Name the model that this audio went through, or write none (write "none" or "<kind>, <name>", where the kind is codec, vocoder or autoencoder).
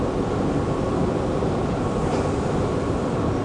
none